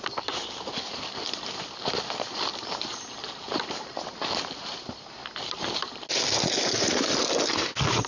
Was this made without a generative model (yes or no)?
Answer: yes